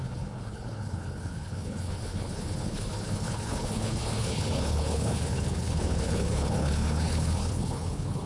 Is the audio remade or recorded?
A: remade